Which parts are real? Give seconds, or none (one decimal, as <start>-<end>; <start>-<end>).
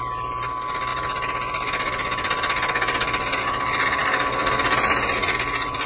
0.0-5.9